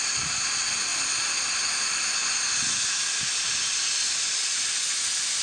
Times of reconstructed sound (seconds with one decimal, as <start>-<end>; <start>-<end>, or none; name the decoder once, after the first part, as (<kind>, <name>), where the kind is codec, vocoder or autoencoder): none